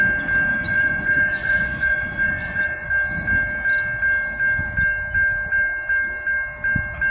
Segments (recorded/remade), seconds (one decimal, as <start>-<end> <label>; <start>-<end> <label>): 0.0-0.5 recorded; 0.5-2.9 remade; 2.9-7.1 recorded